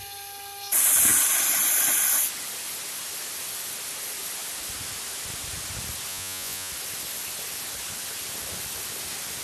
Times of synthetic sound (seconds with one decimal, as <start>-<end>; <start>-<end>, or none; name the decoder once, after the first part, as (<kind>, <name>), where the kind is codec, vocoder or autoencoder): 6.1-6.7 (vocoder, Vocos)